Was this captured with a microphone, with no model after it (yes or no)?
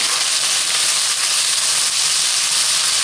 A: yes